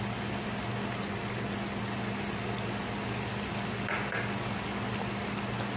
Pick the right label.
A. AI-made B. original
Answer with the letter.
B